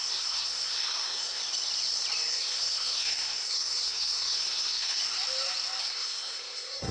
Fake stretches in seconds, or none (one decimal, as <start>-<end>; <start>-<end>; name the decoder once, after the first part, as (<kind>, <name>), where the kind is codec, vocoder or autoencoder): 0.0-1.4 (codec, SNAC); 2.3-5.0; 5.8-6.9